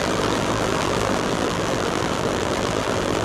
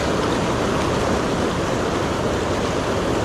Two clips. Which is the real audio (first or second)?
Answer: second